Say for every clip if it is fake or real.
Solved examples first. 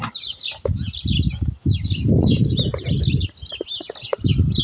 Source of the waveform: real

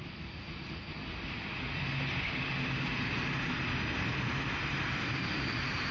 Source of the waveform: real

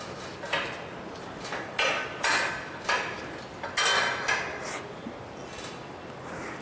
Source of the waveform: real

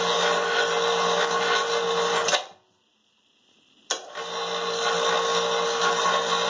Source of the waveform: real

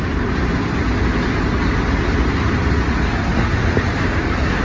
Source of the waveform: real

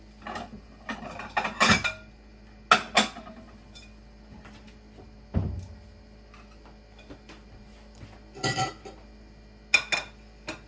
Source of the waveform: real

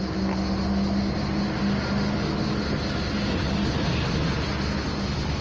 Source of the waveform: real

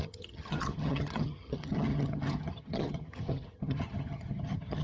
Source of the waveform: fake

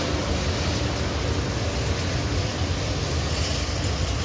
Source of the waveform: real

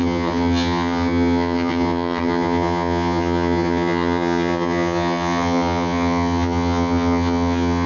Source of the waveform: fake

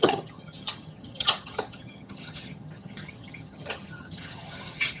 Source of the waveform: fake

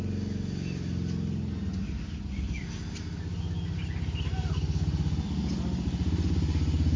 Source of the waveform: real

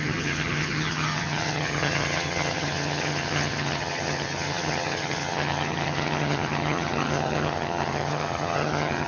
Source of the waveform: fake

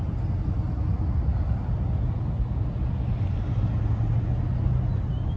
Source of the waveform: real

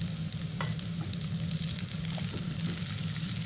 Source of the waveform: real